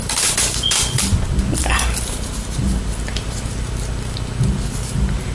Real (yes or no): yes